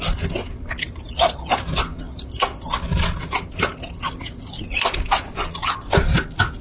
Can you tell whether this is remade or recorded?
recorded